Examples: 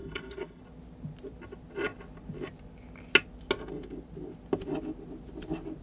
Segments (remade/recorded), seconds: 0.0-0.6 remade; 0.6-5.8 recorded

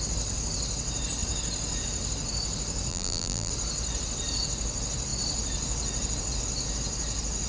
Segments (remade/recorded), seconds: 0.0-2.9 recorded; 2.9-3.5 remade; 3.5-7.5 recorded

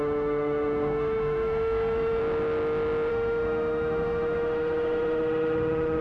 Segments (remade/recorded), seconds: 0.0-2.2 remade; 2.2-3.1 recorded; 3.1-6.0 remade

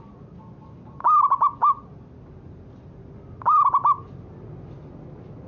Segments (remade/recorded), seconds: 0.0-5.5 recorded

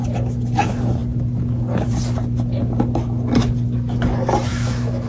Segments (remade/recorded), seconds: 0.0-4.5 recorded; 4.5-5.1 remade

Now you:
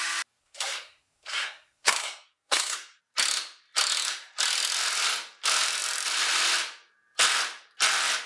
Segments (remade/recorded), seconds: 0.0-0.4 recorded; 0.4-3.0 remade; 3.0-8.3 recorded

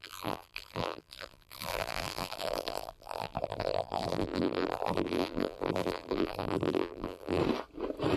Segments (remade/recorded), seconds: 0.0-7.4 remade; 7.4-8.2 recorded